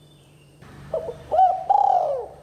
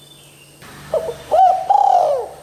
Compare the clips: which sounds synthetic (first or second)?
first